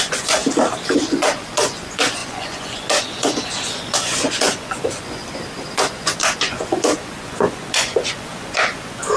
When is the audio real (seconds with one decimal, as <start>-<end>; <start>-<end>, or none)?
0.4-1.0; 5.2-5.7